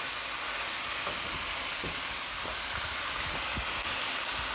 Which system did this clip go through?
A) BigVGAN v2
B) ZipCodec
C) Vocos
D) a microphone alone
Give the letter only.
D